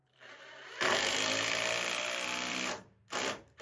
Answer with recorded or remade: remade